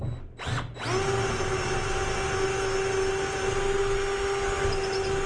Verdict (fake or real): real